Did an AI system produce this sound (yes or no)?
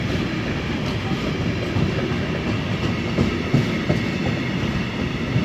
no